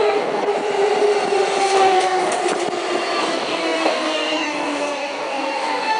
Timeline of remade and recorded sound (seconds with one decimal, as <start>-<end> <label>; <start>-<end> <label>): 0.0-0.5 remade; 0.5-1.6 recorded; 1.6-2.4 remade; 2.4-3.2 recorded; 3.2-6.0 remade